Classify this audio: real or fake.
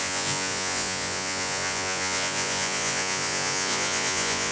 fake